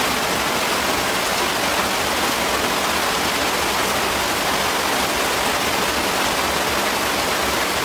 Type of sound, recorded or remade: recorded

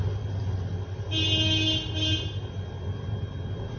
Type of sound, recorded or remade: recorded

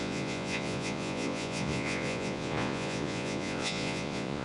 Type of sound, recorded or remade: remade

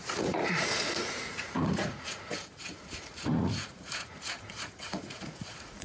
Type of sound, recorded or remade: remade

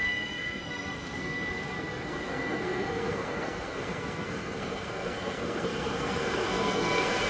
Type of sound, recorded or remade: remade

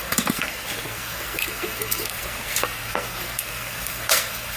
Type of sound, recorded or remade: remade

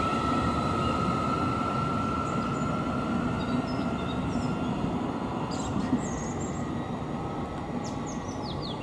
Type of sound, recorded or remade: recorded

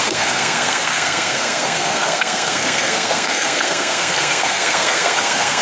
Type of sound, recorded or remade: remade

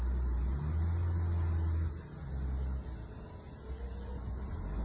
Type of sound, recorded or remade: recorded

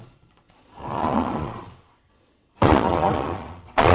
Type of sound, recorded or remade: remade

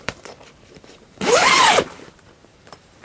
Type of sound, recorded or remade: remade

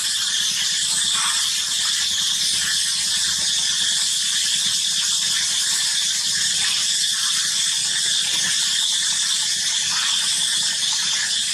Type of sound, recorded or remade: recorded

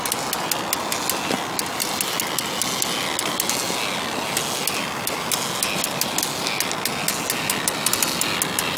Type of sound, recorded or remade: recorded